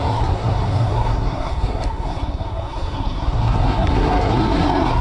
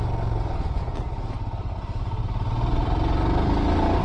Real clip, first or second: second